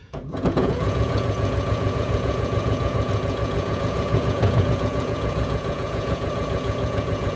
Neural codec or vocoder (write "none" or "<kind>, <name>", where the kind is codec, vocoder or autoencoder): vocoder, Vocos